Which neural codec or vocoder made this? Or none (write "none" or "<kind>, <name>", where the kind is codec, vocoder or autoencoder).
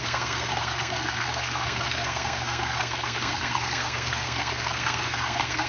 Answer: codec, SNAC